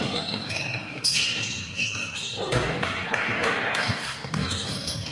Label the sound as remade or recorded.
remade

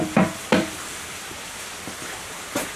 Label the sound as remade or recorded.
recorded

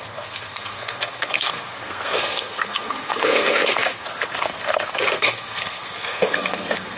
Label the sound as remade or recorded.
remade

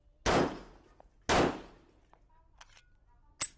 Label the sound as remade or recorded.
recorded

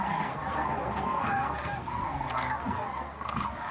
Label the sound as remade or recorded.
remade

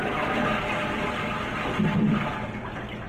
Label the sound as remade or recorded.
recorded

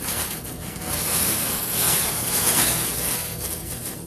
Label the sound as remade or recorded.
remade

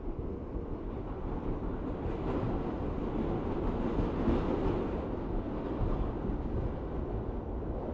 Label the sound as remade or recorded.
recorded